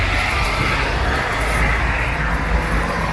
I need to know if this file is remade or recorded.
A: recorded